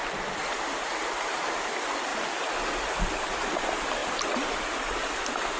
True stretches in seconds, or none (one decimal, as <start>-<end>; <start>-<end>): 0.0-5.6